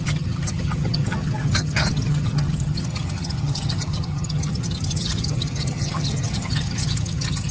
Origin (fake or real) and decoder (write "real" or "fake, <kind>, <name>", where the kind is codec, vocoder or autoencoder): fake, vocoder, HiFi-GAN